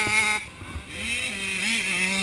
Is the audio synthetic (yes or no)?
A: no